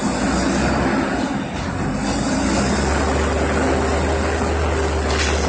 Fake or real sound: real